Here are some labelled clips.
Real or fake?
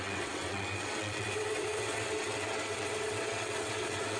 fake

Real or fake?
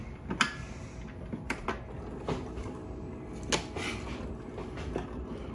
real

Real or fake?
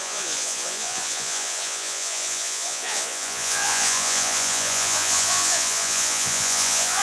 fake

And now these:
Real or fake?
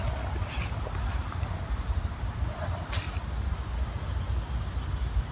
real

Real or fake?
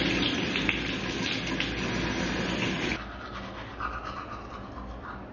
real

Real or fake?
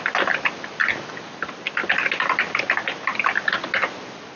real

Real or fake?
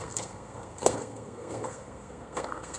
fake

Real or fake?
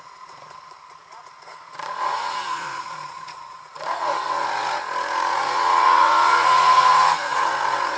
fake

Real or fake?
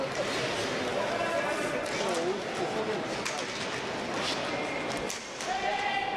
real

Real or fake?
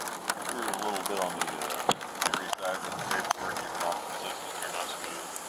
real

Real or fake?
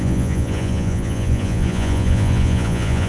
fake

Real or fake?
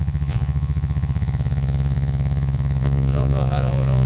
fake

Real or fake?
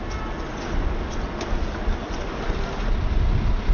real